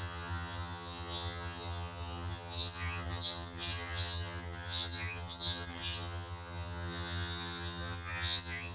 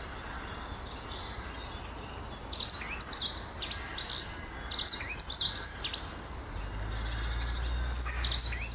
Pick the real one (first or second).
second